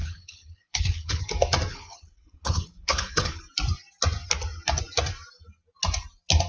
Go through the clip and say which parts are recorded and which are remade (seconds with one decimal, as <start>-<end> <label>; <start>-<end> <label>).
0.0-1.2 remade; 1.2-1.7 recorded; 1.7-3.4 remade; 3.4-6.5 recorded